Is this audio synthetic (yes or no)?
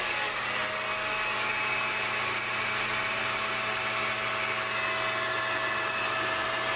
no